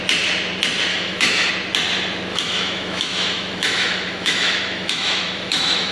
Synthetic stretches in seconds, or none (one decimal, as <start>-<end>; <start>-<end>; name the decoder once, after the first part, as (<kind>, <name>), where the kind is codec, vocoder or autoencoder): 0.9-1.5 (autoencoder, DAC-VAE); 2.3-5.9